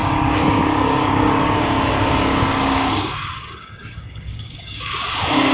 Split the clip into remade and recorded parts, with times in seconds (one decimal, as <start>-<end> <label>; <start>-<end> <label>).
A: 0.0-5.5 remade